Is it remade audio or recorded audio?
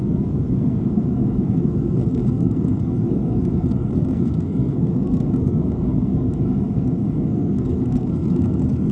remade